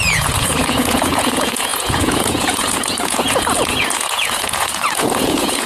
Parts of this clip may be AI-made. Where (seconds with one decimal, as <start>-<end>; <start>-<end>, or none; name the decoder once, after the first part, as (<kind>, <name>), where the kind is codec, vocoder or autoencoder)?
0.0-5.7 (vocoder, Vocos)